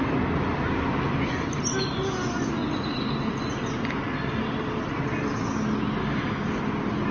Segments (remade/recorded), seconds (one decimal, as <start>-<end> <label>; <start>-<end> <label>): 0.0-6.0 recorded; 6.0-6.6 remade; 6.6-7.1 recorded